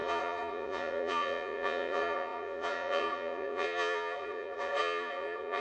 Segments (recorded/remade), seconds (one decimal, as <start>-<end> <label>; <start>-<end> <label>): 0.0-5.6 remade